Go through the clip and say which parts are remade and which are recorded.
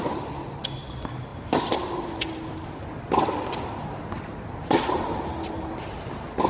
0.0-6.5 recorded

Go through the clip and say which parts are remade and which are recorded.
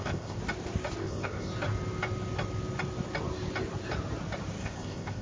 0.0-0.4 remade; 0.4-1.0 recorded; 1.0-1.5 remade; 1.5-4.6 recorded; 4.6-5.2 remade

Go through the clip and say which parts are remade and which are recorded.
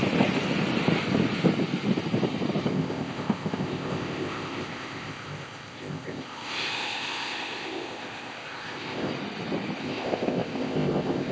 0.0-2.7 recorded; 2.7-9.1 remade; 9.1-9.8 recorded; 9.8-11.3 remade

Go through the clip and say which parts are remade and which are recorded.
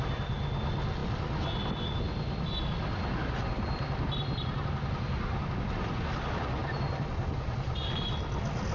0.0-8.7 recorded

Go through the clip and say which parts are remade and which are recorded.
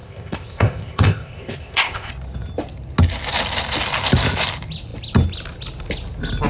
0.0-2.1 remade; 2.1-6.5 recorded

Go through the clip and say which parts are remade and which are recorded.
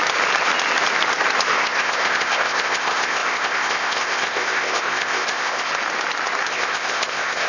0.0-1.5 recorded; 1.5-5.7 remade; 5.7-6.5 recorded; 6.5-7.5 remade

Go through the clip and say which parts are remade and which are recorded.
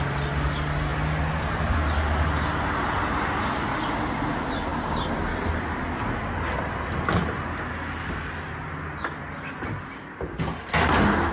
0.0-11.3 recorded